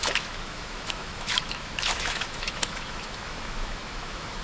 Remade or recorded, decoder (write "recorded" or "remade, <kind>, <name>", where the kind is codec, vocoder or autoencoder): remade, autoencoder, DAC-VAE